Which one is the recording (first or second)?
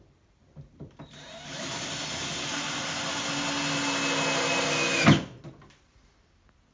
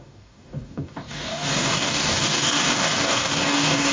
first